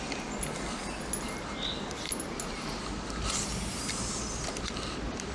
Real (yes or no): yes